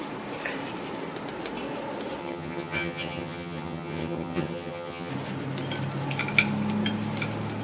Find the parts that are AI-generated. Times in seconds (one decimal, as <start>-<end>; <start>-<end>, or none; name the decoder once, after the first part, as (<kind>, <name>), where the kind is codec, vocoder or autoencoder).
2.2-5.1 (vocoder, HiFi-GAN)